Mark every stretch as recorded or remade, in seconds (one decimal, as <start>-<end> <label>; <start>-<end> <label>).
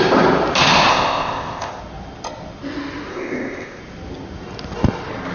0.0-0.9 recorded; 0.9-1.8 remade; 1.8-3.1 recorded; 3.1-3.8 remade; 3.8-5.3 recorded